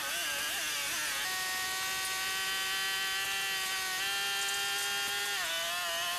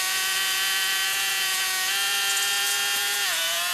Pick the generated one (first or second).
second